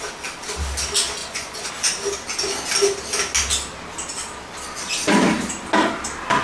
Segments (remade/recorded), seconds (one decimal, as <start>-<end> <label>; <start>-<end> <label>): 0.0-1.2 recorded; 1.2-1.7 remade; 1.7-6.4 recorded